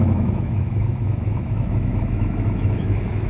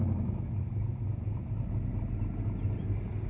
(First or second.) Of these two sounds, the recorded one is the second